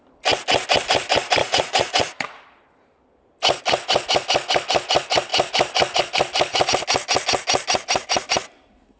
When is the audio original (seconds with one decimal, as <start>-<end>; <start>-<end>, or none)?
0.0-1.4; 2.6-9.0